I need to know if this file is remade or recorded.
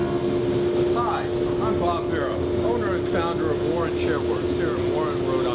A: recorded